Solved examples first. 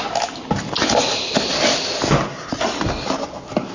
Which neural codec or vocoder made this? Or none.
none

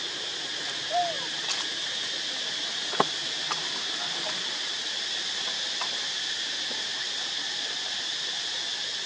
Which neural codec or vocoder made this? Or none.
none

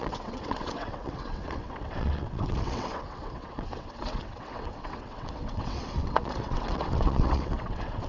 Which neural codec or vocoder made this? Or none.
vocoder, WaveNeXt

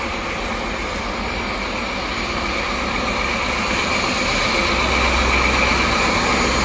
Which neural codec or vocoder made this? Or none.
none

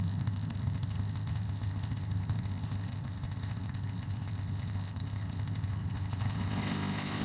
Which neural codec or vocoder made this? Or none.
codec, ZipCodec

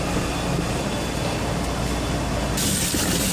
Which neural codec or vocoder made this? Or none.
none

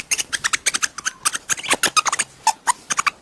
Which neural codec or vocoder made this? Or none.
none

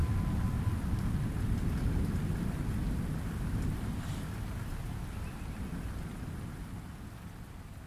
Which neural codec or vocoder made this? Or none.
none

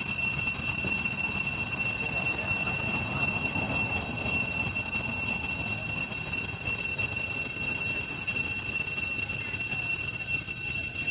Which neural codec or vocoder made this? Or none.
none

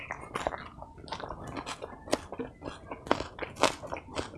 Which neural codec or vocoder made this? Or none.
none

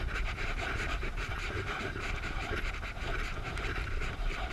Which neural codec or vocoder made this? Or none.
vocoder, BigVGAN v2